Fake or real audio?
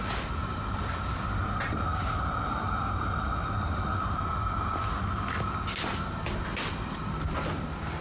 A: real